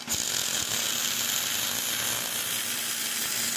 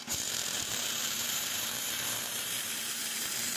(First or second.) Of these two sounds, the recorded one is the first